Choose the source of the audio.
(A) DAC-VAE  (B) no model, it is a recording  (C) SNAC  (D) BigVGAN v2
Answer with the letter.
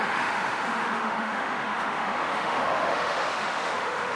A